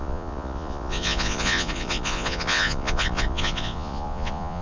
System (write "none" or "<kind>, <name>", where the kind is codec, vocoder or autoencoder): vocoder, Vocos